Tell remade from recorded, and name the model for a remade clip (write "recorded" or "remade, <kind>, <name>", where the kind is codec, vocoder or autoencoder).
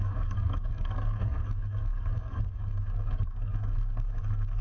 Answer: remade, codec, DAC